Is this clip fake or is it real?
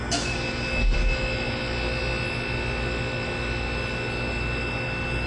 real